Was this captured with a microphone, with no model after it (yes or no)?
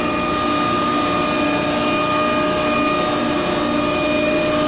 yes